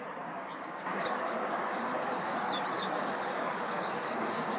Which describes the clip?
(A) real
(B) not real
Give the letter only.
B